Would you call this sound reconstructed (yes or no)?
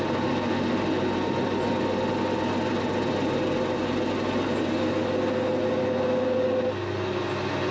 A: no